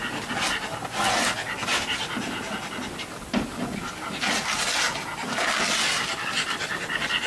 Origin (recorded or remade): recorded